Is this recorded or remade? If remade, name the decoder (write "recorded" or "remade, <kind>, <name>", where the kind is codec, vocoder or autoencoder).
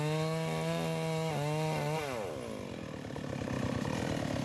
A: recorded